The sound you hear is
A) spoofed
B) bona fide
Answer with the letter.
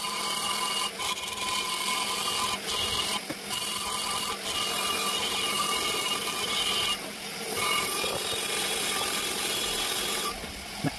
B